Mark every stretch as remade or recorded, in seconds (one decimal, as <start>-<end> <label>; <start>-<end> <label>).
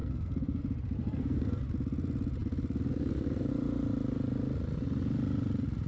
0.0-0.6 remade; 0.6-1.0 recorded; 1.0-1.6 remade; 1.6-5.9 recorded